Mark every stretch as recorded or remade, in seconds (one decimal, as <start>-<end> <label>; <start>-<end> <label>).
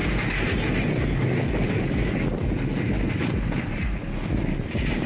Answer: 0.0-5.1 recorded